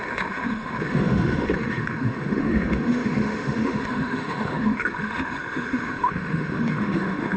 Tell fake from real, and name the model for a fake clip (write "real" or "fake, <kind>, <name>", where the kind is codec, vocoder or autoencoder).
fake, autoencoder, DAC-VAE